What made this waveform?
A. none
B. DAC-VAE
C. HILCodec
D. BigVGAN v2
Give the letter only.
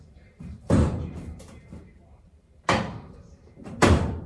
D